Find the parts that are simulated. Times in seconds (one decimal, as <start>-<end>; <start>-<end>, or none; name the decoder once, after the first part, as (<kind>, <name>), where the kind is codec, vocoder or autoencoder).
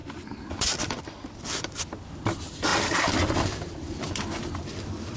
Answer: 0.5-5.2 (vocoder, BigVGAN v2)